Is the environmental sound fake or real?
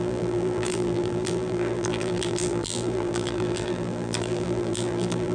fake